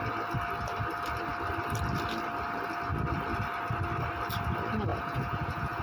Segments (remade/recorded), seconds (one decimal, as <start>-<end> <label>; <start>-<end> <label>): 0.0-4.9 recorded; 4.9-5.8 remade